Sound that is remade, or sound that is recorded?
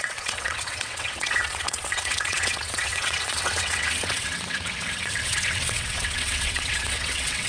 remade